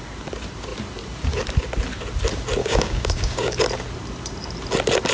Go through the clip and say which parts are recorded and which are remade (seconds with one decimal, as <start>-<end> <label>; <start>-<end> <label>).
0.0-2.6 recorded; 2.6-3.6 remade; 3.6-5.1 recorded